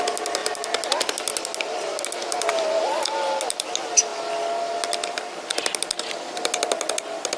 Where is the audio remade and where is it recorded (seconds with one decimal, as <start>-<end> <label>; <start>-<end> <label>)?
0.0-7.4 recorded